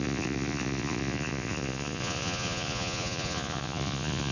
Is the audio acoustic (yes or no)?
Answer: no